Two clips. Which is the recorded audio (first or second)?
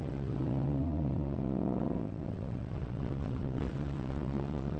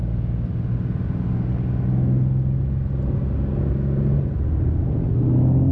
second